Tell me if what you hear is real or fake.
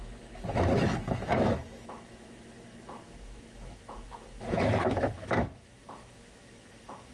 fake